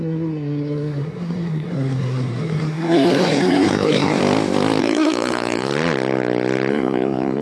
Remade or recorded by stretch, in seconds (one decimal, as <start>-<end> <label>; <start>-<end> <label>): 0.0-4.2 remade; 4.2-4.8 recorded; 4.8-5.7 remade; 5.7-6.7 recorded; 6.7-7.4 remade